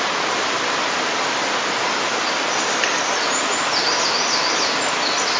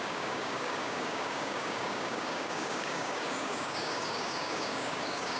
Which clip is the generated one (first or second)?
second